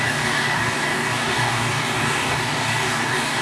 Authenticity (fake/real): fake